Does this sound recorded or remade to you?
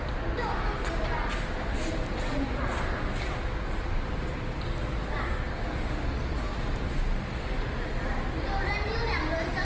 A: recorded